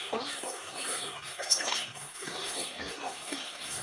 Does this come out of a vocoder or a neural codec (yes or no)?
yes